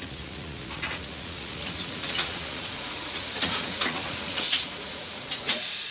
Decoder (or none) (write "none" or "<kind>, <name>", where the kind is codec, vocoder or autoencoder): vocoder, Vocos